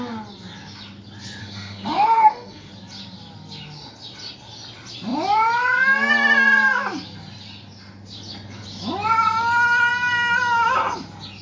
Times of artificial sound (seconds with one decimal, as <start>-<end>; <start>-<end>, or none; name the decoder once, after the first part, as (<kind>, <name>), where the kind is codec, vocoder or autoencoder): 1.4-2.7 (autoencoder, DAC-VAE)